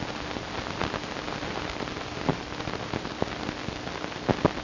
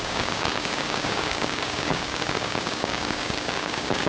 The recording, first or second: first